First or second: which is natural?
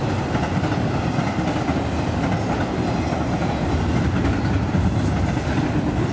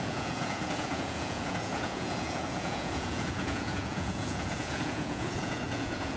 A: first